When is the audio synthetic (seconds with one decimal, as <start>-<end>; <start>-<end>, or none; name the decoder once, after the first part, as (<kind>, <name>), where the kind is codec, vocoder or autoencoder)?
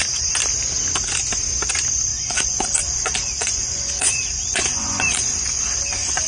2.1-6.3 (vocoder, Vocos)